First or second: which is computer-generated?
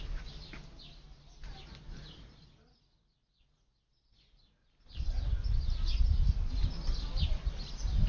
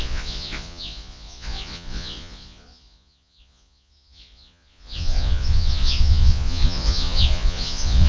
second